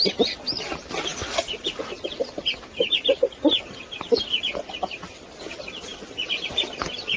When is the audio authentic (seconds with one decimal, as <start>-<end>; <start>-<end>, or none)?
0.0-7.2